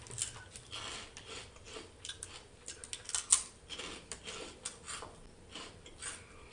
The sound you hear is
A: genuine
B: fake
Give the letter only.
A